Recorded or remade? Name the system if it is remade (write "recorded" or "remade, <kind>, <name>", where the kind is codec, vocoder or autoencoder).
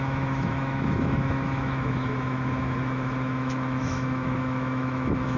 remade, autoencoder, DAC-VAE